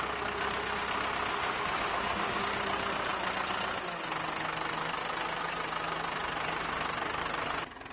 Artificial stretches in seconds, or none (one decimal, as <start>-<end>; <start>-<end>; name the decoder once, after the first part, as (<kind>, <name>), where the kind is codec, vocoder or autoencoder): 1.3-2.4 (autoencoder, DAC-VAE)

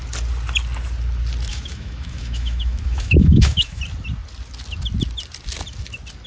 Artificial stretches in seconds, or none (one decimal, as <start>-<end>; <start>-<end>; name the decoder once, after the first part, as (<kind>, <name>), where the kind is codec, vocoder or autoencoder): 1.5-3.8 (autoencoder, DAC-VAE)

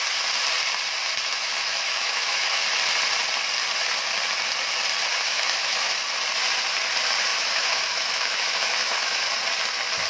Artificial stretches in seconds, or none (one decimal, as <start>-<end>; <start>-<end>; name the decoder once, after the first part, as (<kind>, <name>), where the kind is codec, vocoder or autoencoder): 1.3-2.6 (autoencoder, DAC-VAE); 5.1-5.9; 7.3-9.3

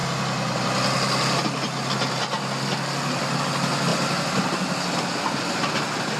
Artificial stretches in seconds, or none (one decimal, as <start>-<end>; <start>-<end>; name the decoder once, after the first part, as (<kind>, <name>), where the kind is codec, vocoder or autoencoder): none

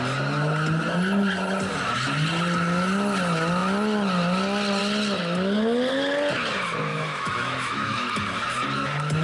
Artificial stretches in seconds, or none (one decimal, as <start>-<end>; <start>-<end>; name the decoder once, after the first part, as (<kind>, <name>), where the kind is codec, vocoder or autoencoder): 6.9-8.1 (autoencoder, DAC-VAE)

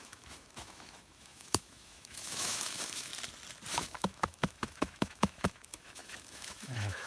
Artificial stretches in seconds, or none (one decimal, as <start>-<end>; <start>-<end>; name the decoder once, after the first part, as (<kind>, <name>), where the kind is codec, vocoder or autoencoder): 0.0-3.1 (autoencoder, DAC-VAE); 3.7-7.1